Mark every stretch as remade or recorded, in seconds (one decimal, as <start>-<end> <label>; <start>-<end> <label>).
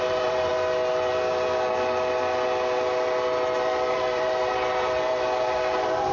0.0-0.5 remade; 0.5-3.9 recorded; 3.9-6.1 remade